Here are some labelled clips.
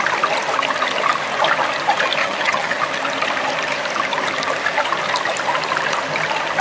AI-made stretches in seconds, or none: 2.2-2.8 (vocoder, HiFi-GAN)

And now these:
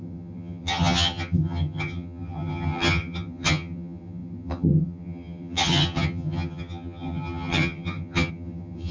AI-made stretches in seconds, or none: 0.0-8.9 (vocoder, HiFi-GAN)

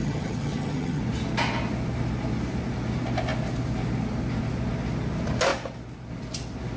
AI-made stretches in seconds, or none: 0.0-1.0 (vocoder, HiFi-GAN)

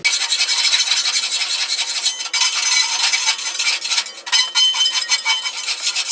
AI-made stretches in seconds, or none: none

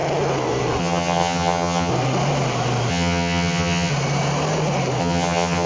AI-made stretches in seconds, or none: 0.8-1.9 (vocoder, HiFi-GAN); 2.9-3.9; 5.0-5.7